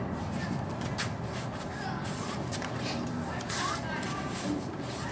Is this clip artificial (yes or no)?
no